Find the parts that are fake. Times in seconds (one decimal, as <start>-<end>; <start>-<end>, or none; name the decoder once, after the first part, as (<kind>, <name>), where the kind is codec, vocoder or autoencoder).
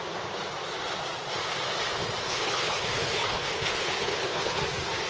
2.2-4.6 (codec, HILCodec)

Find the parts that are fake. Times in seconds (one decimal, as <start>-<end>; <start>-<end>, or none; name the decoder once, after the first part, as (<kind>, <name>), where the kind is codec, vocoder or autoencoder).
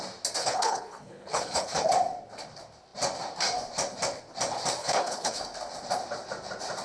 0.4-1.9 (codec, HILCodec); 4.8-5.4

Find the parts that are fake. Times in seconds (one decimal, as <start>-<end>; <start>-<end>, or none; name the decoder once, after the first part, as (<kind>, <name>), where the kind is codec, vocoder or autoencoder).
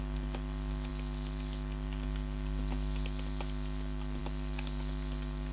none